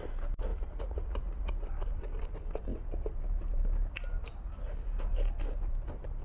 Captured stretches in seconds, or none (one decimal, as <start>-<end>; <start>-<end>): 0.0-0.5; 1.5-6.2